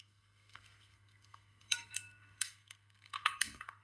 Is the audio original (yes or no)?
no